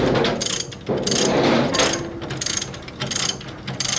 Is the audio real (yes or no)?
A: yes